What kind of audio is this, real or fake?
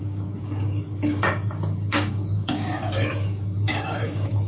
fake